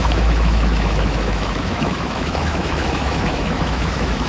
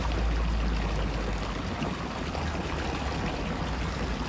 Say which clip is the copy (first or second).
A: first